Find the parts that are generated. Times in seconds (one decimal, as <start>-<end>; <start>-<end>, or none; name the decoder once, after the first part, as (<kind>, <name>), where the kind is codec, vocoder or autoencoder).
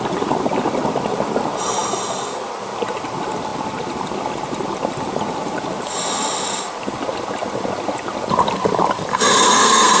9.1-10.0 (codec, SNAC)